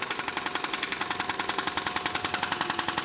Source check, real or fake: real